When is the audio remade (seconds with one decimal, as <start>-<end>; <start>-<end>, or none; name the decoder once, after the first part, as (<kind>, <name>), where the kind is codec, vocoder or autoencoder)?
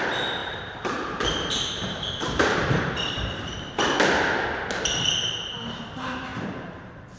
0.4-3.6 (vocoder, BigVGAN v2); 5.2-5.8; 6.3-7.2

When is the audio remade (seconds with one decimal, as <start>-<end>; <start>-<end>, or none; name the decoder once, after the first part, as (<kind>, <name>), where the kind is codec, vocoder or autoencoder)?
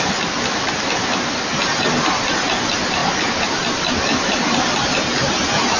3.0-4.9 (vocoder, BigVGAN v2)